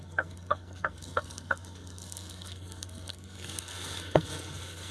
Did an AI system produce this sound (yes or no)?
yes